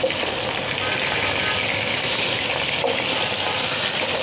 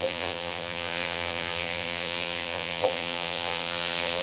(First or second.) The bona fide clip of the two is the first